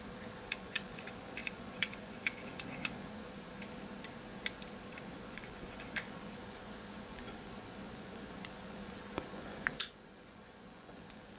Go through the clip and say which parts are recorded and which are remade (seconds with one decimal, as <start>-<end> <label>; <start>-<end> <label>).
0.0-3.5 remade; 3.5-4.9 recorded; 4.9-11.4 remade